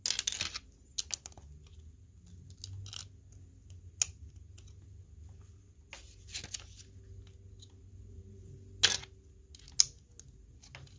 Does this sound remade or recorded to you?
recorded